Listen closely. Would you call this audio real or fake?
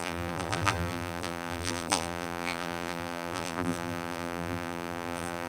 fake